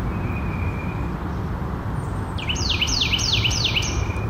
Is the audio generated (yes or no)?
yes